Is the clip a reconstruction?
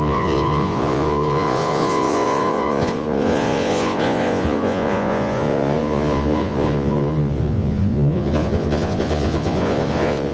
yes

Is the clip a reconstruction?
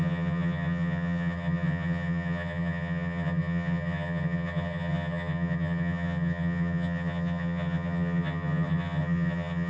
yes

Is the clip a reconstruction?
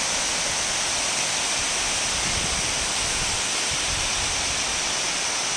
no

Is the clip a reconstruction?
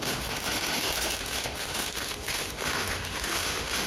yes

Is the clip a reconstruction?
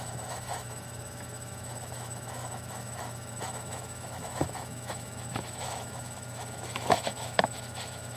yes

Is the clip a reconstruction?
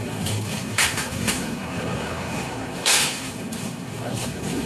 yes